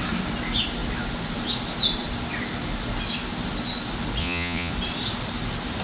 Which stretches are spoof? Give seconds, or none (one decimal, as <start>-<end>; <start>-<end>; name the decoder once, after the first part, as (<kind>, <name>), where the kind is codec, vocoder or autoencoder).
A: 4.2-4.7 (vocoder, Vocos)